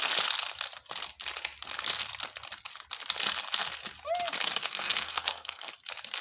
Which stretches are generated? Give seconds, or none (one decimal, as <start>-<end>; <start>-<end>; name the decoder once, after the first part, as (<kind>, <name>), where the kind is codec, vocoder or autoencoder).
4.6-5.7 (codec, SNAC)